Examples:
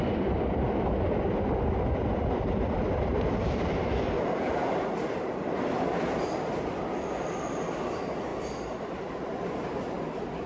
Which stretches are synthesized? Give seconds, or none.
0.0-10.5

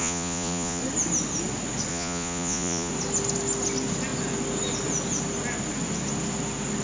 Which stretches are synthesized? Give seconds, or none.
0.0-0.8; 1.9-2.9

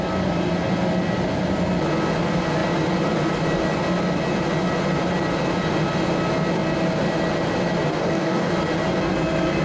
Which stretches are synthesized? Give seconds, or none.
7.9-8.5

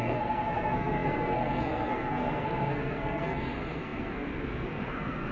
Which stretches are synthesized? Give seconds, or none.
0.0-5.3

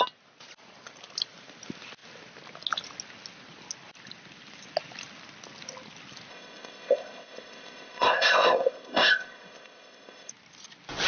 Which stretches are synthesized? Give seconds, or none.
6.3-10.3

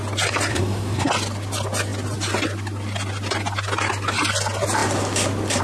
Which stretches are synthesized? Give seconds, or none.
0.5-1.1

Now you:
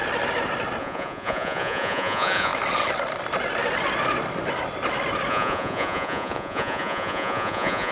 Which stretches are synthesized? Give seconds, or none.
0.8-2.5; 5.3-7.9

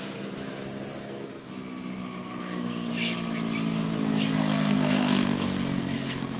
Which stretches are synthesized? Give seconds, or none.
1.0-1.5; 2.2-2.9; 4.4-6.4